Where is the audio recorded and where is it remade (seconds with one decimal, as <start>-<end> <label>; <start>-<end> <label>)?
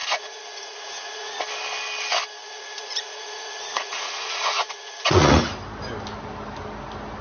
0.0-1.4 remade; 1.4-2.4 recorded; 2.4-5.4 remade; 5.4-7.2 recorded